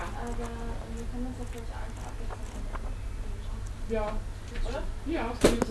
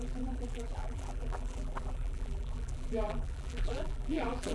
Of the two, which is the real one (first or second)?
first